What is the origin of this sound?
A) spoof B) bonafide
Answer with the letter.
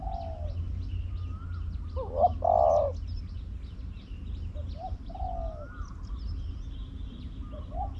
B